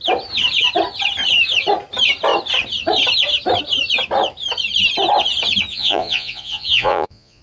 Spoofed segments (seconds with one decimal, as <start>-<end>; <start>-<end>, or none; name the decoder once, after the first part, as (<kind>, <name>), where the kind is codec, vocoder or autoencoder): 5.7-7.4 (vocoder, Vocos)